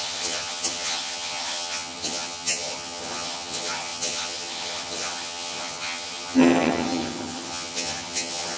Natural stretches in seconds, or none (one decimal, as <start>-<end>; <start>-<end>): none